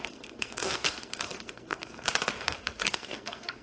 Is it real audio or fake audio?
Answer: fake